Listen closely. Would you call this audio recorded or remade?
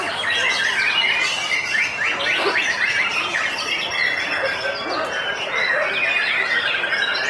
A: recorded